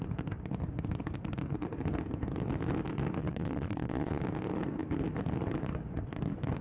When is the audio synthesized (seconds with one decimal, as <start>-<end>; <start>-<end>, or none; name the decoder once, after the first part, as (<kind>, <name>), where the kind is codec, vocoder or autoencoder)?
3.2-4.2 (vocoder, Vocos)